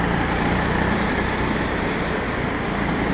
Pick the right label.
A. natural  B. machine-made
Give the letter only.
B